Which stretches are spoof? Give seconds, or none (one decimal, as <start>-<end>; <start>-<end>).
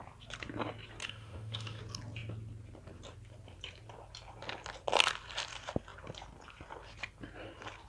1.0-1.8